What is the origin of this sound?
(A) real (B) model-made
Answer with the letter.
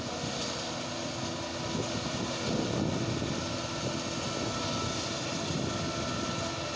A